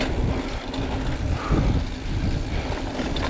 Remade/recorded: recorded